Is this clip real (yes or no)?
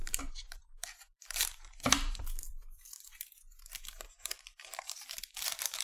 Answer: no